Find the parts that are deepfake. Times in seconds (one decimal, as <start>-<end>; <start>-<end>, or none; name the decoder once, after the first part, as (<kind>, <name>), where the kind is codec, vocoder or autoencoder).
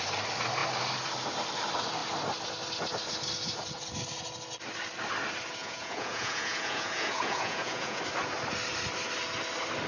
5.6-8.0 (vocoder, Vocos)